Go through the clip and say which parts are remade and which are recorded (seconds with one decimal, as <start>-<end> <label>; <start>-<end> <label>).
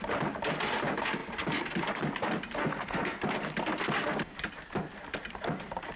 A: 0.0-2.6 recorded; 2.6-3.2 remade; 3.2-6.0 recorded